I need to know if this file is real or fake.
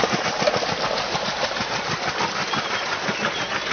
real